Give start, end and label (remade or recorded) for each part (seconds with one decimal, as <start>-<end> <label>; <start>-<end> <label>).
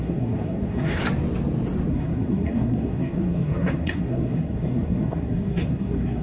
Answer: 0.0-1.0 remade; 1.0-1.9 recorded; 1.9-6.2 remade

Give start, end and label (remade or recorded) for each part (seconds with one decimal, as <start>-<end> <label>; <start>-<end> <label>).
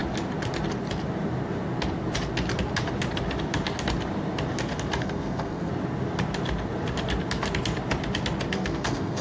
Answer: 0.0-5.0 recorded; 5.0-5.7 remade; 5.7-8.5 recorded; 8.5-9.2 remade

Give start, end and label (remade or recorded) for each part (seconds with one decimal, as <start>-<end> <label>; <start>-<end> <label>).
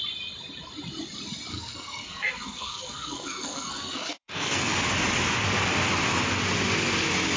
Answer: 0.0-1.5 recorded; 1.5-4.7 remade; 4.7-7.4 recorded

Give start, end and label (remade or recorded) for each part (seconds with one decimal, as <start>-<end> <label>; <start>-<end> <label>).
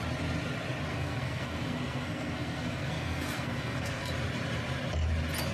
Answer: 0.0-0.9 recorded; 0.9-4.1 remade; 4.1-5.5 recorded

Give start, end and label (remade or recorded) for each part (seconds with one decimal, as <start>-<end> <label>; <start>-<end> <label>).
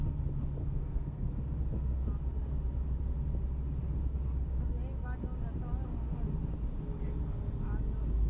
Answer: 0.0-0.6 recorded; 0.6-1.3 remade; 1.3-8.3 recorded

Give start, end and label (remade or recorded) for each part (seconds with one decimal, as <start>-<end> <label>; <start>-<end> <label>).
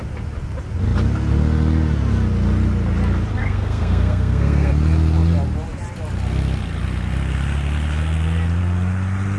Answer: 0.0-3.4 recorded; 3.4-4.7 remade; 4.7-9.4 recorded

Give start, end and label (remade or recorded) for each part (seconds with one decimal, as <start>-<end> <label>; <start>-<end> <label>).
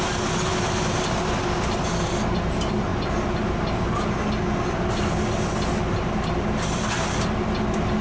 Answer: 0.0-8.0 recorded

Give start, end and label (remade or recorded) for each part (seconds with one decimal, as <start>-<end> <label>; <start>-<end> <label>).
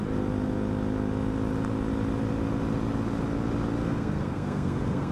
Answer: 0.0-3.8 recorded; 3.8-5.1 remade